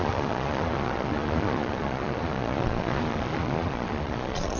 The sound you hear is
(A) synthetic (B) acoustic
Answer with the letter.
A